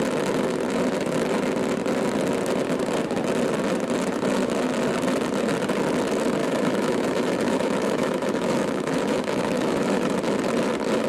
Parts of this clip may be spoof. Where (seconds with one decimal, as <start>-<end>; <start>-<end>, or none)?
6.4-10.3